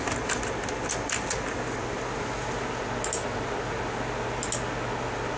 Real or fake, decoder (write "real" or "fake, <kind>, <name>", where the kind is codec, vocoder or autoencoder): real